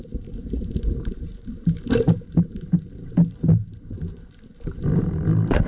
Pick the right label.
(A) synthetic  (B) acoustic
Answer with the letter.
A